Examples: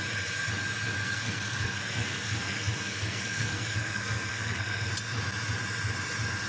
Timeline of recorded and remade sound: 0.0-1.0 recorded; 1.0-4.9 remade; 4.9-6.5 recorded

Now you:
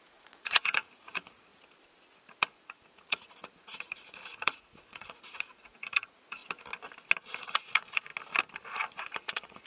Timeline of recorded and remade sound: 0.0-1.5 remade; 1.5-2.6 recorded; 2.6-6.4 remade; 6.4-7.4 recorded; 7.4-8.1 remade; 8.1-9.0 recorded; 9.0-9.7 remade

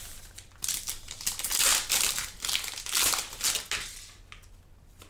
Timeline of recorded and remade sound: 0.0-5.1 recorded

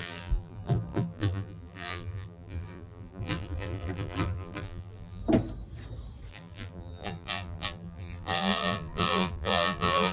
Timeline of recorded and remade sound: 0.0-5.2 remade; 5.2-6.3 recorded; 6.3-10.1 remade

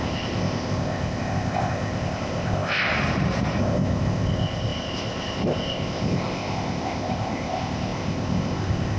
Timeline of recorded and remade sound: 0.0-2.9 remade; 2.9-3.6 recorded; 3.6-9.0 remade

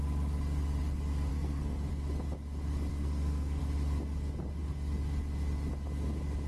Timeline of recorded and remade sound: 0.0-1.3 recorded; 1.3-1.9 remade; 1.9-2.9 recorded; 2.9-3.6 remade; 3.6-6.5 recorded